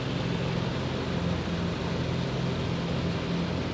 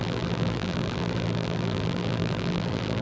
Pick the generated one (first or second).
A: second